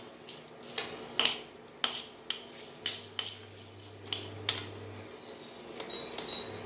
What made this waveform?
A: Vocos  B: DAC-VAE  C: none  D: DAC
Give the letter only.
C